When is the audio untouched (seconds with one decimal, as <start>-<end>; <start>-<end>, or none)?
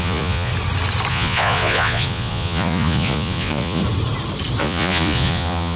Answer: 0.5-1.1; 3.8-4.6